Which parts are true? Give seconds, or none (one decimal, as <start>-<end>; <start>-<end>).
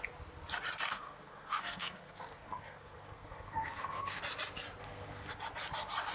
0.0-0.9; 4.2-4.8; 5.3-6.1